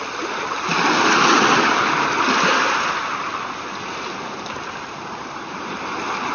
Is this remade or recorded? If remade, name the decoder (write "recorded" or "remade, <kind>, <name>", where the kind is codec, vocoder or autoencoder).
recorded